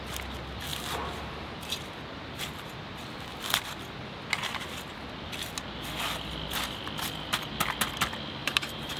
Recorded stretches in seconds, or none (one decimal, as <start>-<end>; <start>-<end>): 0.0-0.7; 1.6-8.4